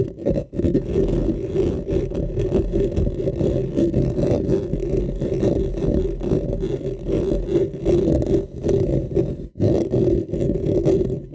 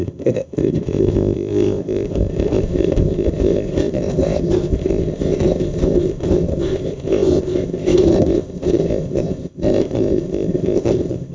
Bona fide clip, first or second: first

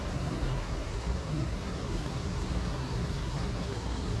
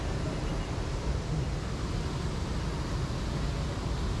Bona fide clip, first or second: second